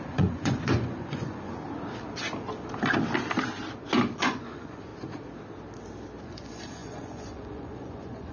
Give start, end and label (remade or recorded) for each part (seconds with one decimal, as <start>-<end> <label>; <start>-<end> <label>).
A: 0.0-1.5 remade; 1.5-4.1 recorded; 4.1-4.9 remade; 4.9-6.2 recorded; 6.2-8.3 remade